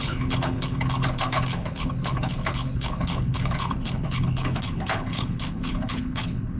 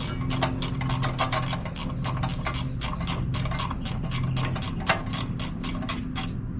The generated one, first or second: first